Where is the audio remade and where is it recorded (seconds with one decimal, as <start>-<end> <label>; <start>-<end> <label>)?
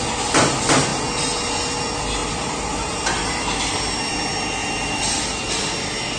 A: 0.0-6.2 recorded